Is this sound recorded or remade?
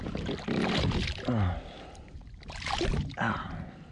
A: recorded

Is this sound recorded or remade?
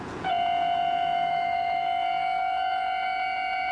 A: remade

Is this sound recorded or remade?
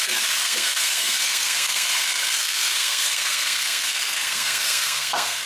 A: remade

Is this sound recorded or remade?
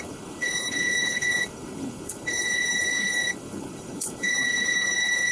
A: remade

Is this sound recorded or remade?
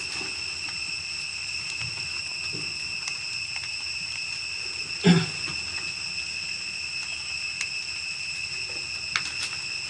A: recorded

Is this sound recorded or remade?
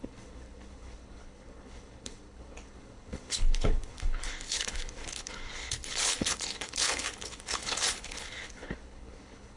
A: remade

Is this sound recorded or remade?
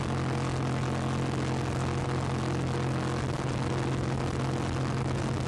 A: recorded